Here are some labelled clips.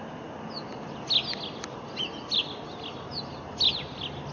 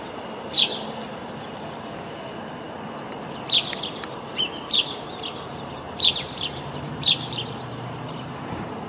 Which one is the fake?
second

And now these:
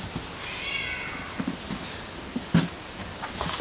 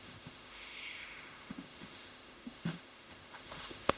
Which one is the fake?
second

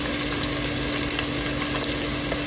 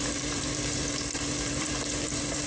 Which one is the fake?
second